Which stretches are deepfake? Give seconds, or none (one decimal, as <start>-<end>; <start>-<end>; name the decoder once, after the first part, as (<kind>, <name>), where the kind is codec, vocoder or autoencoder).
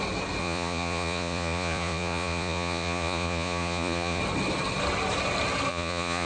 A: 0.4-4.2 (vocoder, Vocos); 5.7-6.3